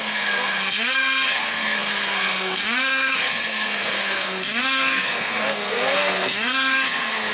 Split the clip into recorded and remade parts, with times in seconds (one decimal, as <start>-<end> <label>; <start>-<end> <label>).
0.0-7.3 remade